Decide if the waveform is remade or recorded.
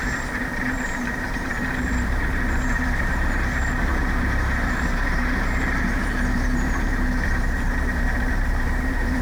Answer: remade